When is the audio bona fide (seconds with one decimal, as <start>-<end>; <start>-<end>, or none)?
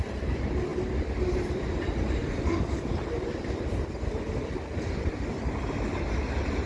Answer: 0.0-6.7